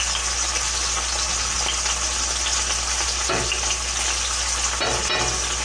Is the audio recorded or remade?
recorded